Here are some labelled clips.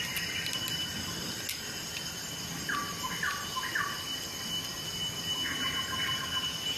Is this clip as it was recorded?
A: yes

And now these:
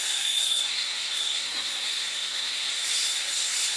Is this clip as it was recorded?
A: no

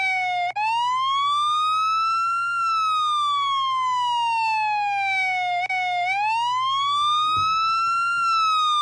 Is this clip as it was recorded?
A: yes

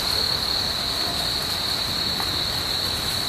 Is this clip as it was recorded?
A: yes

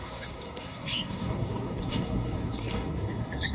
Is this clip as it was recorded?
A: no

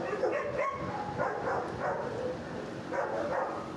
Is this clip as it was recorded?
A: yes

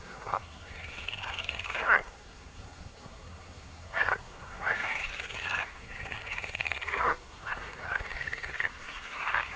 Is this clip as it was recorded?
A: no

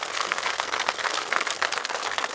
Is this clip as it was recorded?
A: no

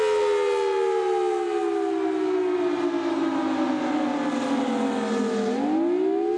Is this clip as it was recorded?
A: yes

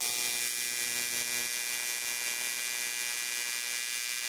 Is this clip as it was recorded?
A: yes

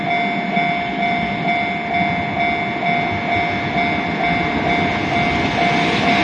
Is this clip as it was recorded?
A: yes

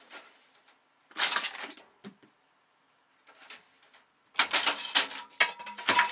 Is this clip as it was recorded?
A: yes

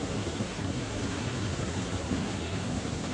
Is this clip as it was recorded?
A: no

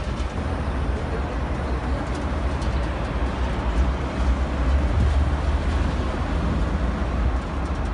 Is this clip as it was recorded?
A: yes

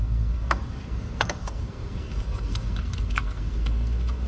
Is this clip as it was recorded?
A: no